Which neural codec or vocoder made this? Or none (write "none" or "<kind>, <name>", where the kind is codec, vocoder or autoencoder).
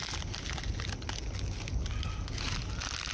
none